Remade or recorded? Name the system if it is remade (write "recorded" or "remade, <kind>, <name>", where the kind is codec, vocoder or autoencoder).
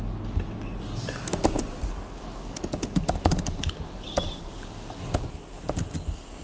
recorded